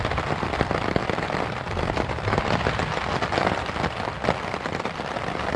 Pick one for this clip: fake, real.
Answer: real